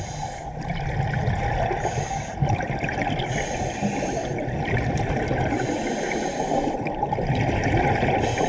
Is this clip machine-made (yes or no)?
no